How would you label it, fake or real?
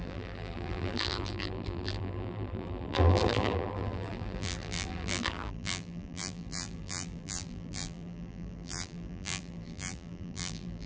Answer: fake